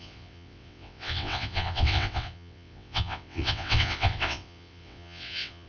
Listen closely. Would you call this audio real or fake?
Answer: fake